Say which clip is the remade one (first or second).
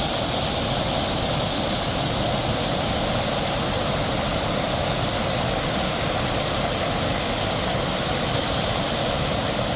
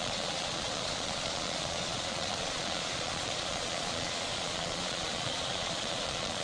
second